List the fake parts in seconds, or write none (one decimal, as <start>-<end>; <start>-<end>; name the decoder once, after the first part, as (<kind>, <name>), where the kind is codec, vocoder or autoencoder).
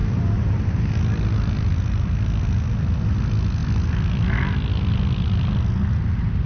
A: 0.0-0.9 (vocoder, BigVGAN v2)